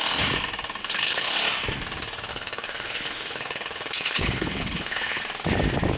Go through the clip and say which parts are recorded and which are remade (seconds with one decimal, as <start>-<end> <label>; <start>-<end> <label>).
0.0-0.8 recorded; 0.8-1.3 remade; 1.3-2.3 recorded; 2.3-5.2 remade; 5.2-6.0 recorded